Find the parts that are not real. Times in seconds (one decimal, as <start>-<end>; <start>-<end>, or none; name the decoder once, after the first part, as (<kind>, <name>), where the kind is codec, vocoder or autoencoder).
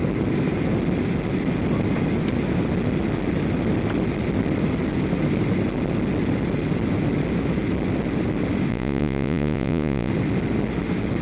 8.7-10.1 (vocoder, Vocos)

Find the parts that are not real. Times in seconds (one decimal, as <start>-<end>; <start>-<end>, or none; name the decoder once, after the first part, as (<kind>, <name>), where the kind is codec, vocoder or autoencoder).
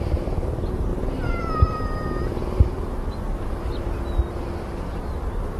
none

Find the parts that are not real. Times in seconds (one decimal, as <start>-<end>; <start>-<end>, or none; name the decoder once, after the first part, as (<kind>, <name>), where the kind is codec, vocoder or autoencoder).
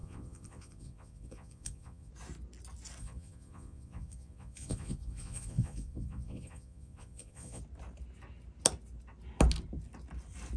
0.0-2.1 (vocoder, Vocos); 3.0-7.6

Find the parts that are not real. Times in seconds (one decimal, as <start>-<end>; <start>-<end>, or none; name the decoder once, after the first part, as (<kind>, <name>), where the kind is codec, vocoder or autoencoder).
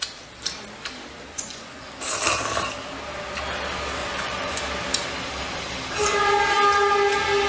1.3-1.9 (vocoder, Vocos); 4.0-4.6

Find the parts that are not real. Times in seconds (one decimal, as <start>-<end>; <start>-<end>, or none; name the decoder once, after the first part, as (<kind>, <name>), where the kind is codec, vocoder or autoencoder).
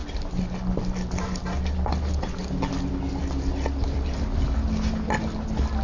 none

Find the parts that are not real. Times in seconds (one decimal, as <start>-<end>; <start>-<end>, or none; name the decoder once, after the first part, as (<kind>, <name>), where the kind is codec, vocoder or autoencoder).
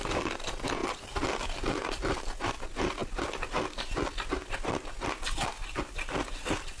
none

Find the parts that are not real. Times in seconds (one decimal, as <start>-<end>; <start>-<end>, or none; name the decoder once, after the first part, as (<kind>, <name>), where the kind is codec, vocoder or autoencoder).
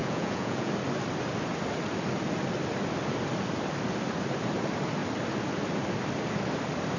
0.0-0.7 (vocoder, Vocos)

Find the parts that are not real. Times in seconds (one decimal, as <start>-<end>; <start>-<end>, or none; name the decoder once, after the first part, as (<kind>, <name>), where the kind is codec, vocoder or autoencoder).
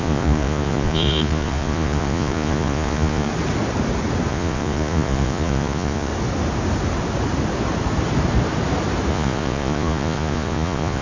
0.0-3.3 (vocoder, Vocos); 4.3-6.1; 9.1-11.0